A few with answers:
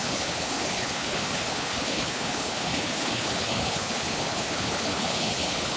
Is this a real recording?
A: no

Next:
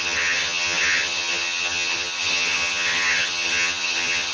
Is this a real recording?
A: no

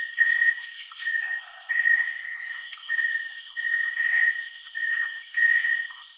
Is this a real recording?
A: no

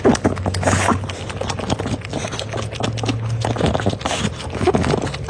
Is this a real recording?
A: yes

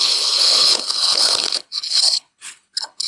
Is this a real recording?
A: no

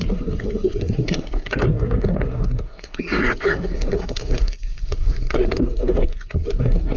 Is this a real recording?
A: no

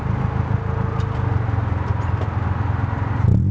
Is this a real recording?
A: yes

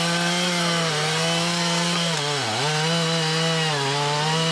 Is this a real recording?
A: yes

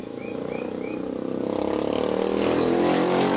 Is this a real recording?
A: yes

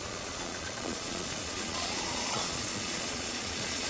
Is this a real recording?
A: no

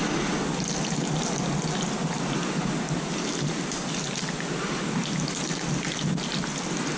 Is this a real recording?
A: yes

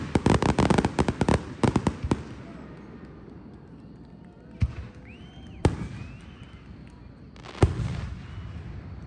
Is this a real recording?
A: yes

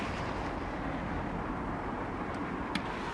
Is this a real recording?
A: yes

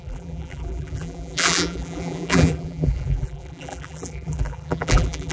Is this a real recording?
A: no